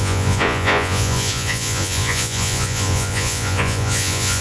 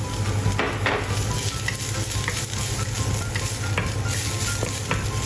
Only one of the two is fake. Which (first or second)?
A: first